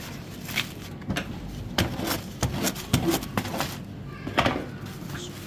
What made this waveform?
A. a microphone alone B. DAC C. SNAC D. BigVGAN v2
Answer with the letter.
A